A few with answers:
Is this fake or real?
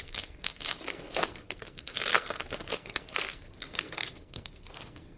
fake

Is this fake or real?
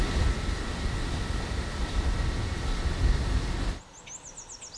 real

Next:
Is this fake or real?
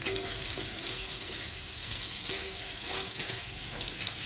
fake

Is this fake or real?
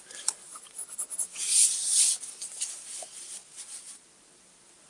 real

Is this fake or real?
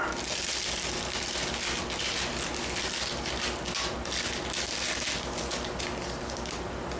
real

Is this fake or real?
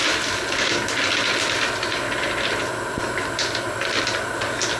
real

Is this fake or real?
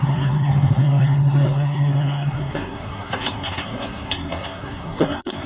fake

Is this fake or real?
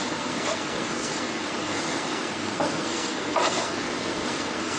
fake